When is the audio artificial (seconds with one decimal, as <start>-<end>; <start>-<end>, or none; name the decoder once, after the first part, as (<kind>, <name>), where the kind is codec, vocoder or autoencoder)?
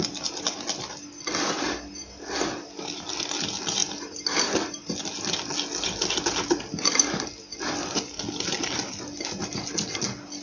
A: none